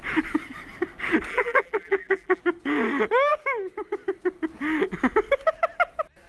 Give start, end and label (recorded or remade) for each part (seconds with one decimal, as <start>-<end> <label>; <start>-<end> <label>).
0.0-1.3 recorded; 1.3-2.4 remade; 2.4-6.3 recorded